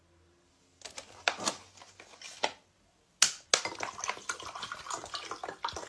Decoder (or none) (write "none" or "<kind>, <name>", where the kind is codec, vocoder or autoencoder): none